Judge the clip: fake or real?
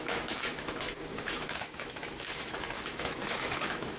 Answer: fake